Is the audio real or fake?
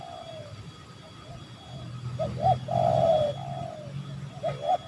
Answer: real